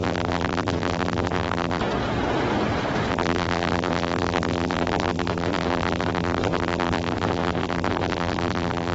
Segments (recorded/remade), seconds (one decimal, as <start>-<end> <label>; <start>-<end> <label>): 0.0-1.8 remade; 1.8-3.1 recorded; 3.1-8.9 remade